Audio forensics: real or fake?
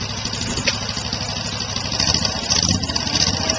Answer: real